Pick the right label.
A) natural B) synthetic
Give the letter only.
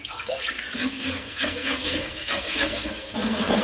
B